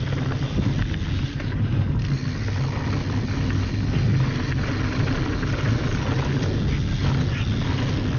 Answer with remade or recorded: recorded